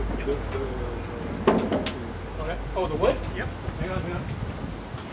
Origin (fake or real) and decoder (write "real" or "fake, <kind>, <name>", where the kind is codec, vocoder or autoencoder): real